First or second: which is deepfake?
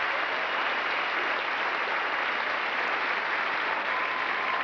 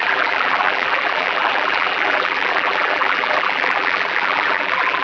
second